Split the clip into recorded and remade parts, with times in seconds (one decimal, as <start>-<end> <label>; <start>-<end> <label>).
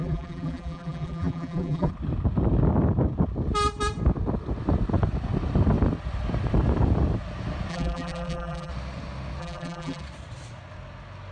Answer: 0.0-1.9 remade; 1.9-7.7 recorded; 7.7-8.7 remade; 8.7-9.4 recorded; 9.4-10.0 remade; 10.0-11.3 recorded